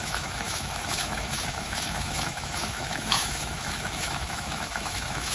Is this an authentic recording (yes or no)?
no